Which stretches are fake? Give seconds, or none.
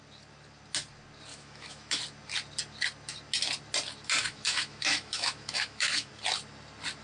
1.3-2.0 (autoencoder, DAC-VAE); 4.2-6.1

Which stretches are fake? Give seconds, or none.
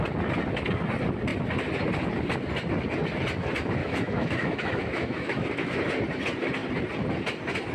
3.8-5.9 (autoencoder, DAC-VAE)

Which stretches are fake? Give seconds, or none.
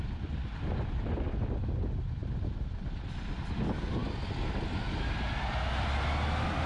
none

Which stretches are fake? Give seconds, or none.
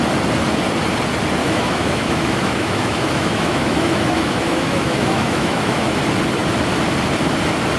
1.4-6.0 (autoencoder, DAC-VAE)